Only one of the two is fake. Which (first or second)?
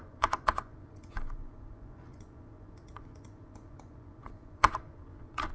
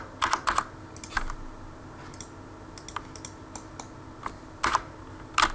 first